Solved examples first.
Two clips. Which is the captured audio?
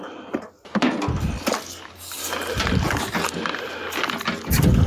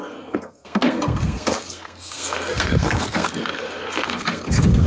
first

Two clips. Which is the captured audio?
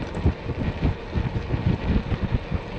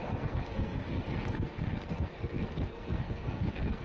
first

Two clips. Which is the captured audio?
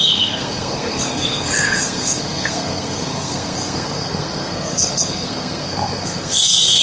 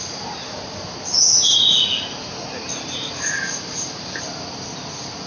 second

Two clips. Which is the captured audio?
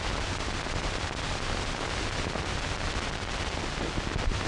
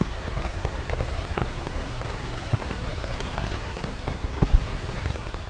first